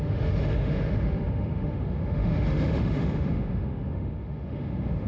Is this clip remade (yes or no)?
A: yes